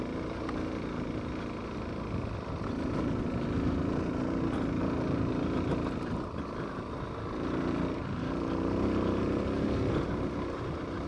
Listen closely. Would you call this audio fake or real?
real